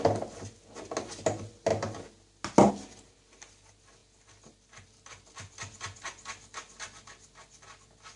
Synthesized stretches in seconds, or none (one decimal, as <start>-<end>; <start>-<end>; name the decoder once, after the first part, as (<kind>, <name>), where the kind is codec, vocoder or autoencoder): none